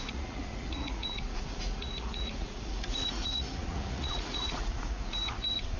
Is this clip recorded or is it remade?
remade